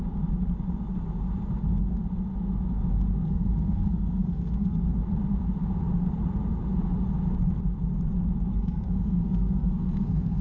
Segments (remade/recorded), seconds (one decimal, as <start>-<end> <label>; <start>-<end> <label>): 0.0-3.1 recorded; 3.1-4.8 remade; 4.8-8.5 recorded; 8.5-10.4 remade